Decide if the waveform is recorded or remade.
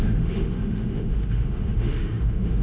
remade